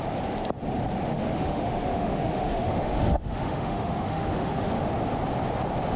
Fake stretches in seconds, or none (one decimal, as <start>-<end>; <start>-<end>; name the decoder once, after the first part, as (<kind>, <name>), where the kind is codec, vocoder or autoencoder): 1.1-4.7 (autoencoder, DAC-VAE)